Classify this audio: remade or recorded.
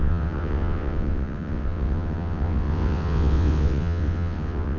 remade